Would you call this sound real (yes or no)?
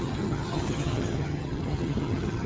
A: no